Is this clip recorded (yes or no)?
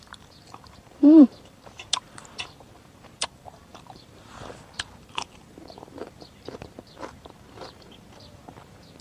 no